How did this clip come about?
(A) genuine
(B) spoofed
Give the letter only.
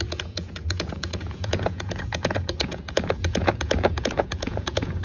B